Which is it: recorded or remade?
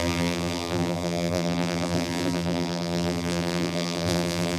remade